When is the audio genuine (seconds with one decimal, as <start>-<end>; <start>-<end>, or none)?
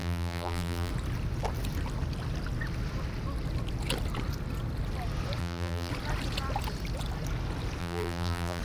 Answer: 0.9-5.4; 5.9-7.8